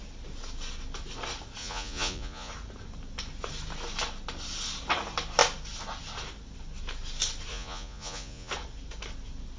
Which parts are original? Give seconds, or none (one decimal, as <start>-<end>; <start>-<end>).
0.0-1.6; 2.5-7.5; 8.5-9.6